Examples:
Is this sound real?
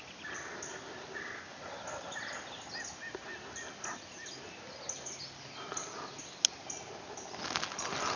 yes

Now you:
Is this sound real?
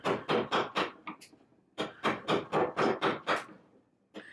yes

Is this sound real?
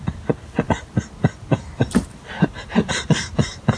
yes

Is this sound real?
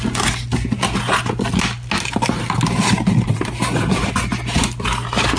yes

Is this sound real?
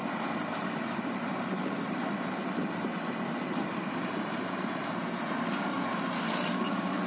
no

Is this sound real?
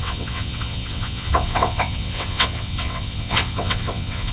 no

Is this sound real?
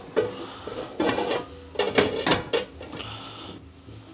yes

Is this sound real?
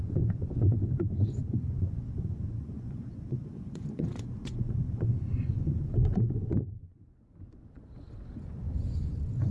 no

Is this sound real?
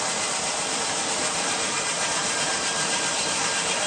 no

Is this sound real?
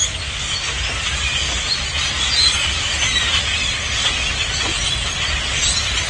yes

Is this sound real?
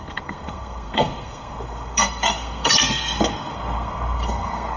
no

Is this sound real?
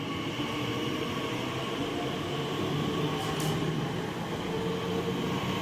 yes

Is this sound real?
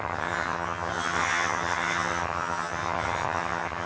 no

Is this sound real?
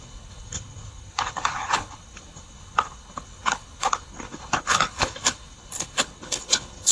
no